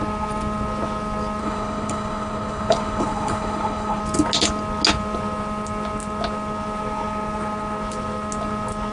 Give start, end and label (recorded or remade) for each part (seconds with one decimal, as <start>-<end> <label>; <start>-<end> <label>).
0.0-1.4 recorded; 1.4-4.0 remade; 4.0-8.9 recorded